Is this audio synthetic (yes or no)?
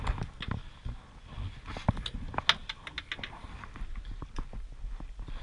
no